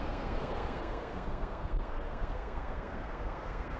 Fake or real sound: fake